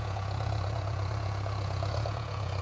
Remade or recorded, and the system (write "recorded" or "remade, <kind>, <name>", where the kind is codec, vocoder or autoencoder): remade, vocoder, Vocos